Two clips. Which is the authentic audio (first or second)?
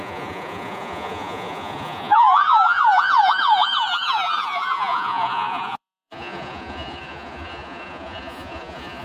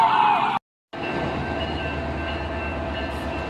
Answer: second